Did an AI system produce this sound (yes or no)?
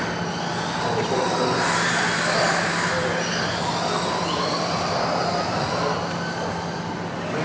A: no